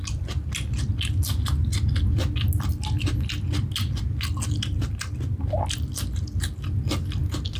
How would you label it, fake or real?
real